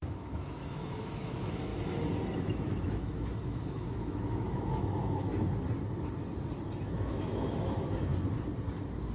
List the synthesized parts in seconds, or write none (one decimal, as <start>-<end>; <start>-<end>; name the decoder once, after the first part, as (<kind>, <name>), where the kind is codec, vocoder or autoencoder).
0.0-1.7 (autoencoder, DAC-VAE); 2.4-5.3; 6.8-8.1